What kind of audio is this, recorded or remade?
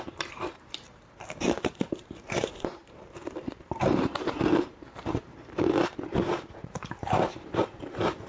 remade